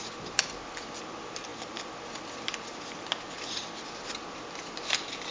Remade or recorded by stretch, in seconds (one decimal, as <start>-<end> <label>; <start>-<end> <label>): 0.0-5.3 recorded

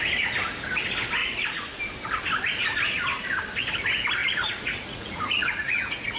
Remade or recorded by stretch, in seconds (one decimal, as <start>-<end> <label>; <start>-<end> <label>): 0.0-1.2 recorded; 1.2-1.8 remade; 1.8-4.2 recorded; 4.2-6.2 remade

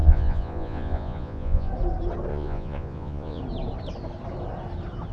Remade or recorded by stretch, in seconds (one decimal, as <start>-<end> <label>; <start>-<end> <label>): 0.0-1.7 remade; 1.7-2.3 recorded; 2.3-3.4 remade; 3.4-5.1 recorded

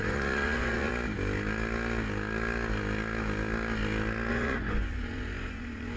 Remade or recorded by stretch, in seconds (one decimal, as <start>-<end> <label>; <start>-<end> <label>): 0.0-0.9 remade; 0.9-4.3 recorded; 4.3-6.0 remade

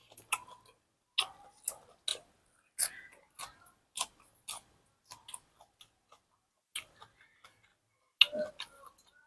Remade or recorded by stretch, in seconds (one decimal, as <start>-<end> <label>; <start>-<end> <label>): 0.0-9.3 recorded

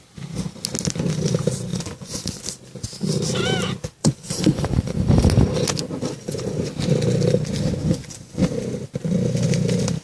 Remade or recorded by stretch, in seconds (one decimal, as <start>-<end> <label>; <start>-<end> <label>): 0.0-1.7 recorded; 1.7-2.4 remade; 2.4-4.0 recorded; 4.0-5.0 remade; 5.0-6.2 recorded; 6.2-6.7 remade; 6.7-7.8 recorded; 7.8-8.4 remade; 8.4-10.0 recorded